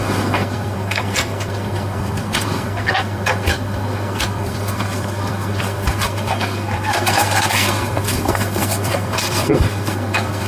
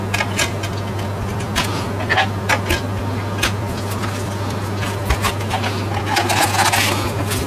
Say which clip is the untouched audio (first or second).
second